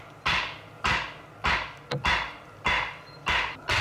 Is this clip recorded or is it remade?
recorded